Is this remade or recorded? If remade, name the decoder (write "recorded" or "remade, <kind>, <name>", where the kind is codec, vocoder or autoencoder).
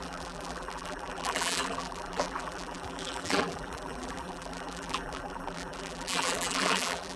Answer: remade, vocoder, BigVGAN v2